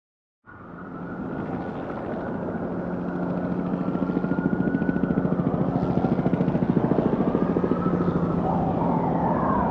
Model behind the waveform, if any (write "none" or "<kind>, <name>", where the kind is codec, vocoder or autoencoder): none